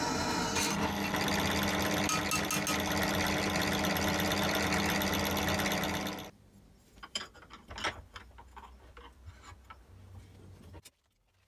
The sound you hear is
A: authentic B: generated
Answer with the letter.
A